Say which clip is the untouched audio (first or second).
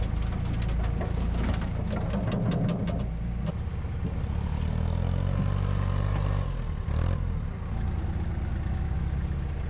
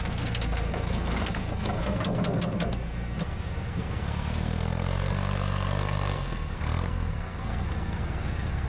first